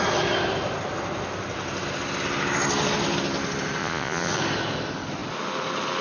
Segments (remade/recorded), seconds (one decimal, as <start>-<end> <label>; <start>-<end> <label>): 0.0-3.8 recorded; 3.8-4.4 remade; 4.4-6.0 recorded